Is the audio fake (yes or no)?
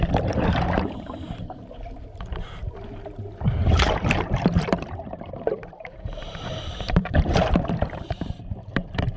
yes